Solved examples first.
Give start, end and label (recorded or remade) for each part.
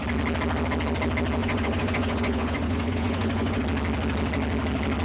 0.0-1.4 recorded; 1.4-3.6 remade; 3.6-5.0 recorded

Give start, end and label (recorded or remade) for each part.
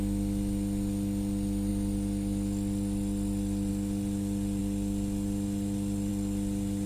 0.0-6.9 recorded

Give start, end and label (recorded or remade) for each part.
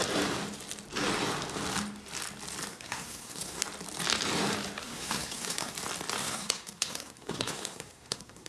0.0-2.7 recorded; 2.7-3.6 remade; 3.6-4.8 recorded; 4.8-5.7 remade; 5.7-6.2 recorded; 6.2-8.5 remade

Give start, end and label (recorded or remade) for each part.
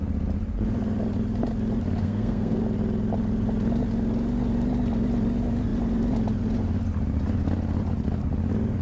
0.0-2.0 recorded; 2.0-2.6 remade; 2.6-8.8 recorded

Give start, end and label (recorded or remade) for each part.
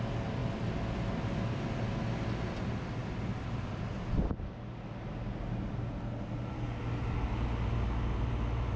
0.0-8.8 recorded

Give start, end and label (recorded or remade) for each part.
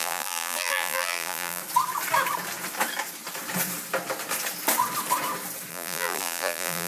0.0-1.6 remade; 1.6-5.7 recorded; 5.7-6.9 remade